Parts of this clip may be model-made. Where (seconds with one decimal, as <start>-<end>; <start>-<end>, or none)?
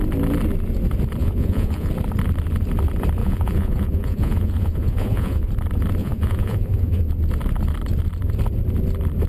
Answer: 1.2-1.9; 3.2-5.5; 6.0-7.1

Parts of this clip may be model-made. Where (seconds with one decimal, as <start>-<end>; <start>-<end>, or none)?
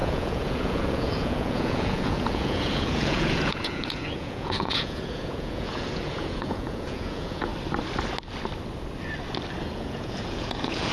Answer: 0.0-7.5; 9.6-10.9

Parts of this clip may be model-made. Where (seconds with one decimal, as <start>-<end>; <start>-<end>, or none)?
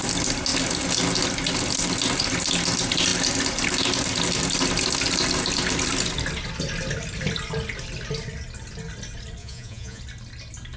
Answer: 9.4-10.0